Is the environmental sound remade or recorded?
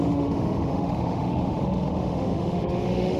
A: remade